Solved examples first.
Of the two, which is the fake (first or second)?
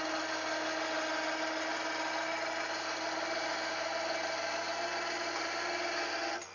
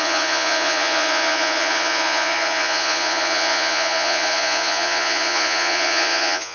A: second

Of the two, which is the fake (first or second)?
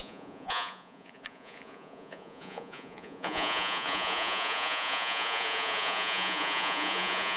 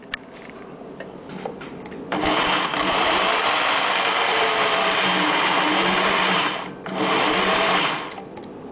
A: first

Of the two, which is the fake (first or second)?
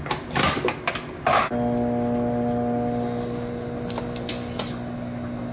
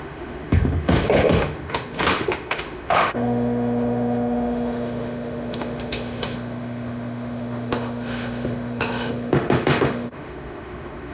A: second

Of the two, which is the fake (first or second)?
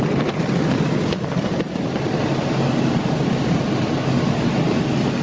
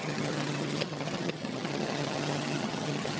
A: second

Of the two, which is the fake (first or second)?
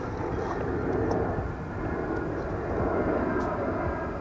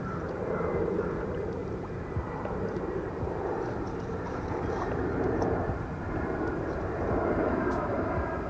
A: second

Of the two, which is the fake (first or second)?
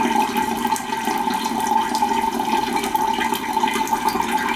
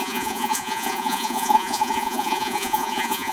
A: second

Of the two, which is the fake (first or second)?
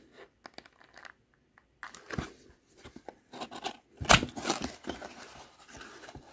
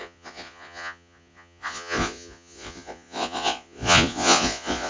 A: second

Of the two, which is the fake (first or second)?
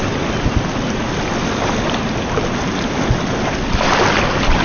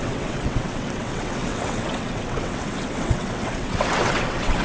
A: second